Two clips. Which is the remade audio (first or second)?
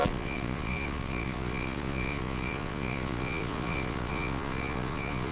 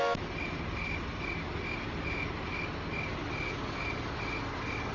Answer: first